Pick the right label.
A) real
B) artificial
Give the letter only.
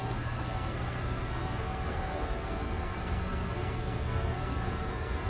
B